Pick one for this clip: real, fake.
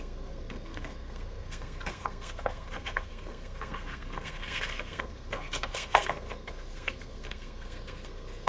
fake